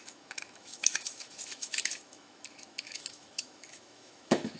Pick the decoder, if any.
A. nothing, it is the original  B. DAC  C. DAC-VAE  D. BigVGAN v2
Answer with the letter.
C